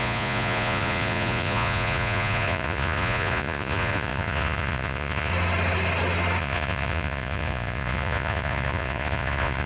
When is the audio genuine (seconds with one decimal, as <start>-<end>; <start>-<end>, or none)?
5.3-6.4